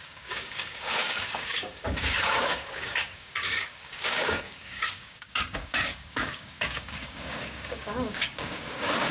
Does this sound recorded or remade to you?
remade